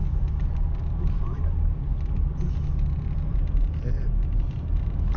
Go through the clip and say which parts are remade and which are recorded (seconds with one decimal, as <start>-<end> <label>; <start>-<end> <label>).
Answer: 0.0-5.2 recorded